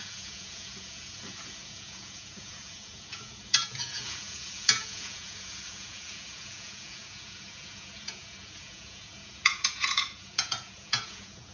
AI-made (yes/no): yes